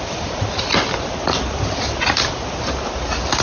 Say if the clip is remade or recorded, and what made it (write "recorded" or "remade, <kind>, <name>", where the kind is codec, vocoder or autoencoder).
recorded